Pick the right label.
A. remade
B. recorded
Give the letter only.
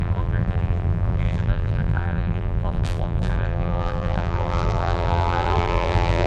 A